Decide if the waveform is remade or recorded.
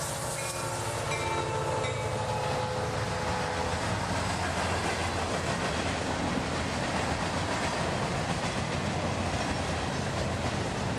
recorded